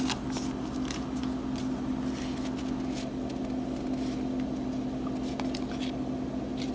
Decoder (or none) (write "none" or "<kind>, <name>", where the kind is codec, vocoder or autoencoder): none